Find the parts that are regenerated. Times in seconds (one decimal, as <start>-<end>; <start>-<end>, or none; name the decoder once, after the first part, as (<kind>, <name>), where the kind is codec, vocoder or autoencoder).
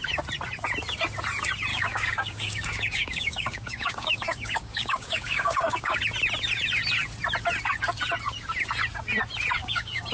1.7-6.0 (codec, DAC); 9.6-10.1